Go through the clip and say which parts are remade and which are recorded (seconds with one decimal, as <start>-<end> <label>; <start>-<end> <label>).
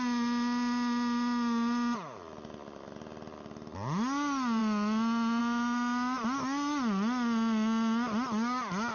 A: 0.0-8.9 recorded